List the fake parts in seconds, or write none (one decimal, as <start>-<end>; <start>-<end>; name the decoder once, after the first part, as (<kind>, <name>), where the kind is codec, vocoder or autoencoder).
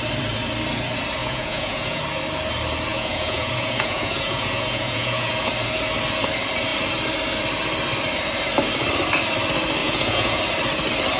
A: 1.2-2.0 (vocoder, Vocos); 2.9-5.5; 9.8-10.4